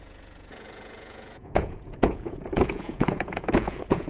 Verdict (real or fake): fake